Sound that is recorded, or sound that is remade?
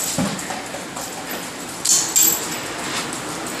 recorded